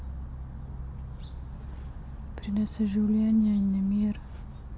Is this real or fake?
real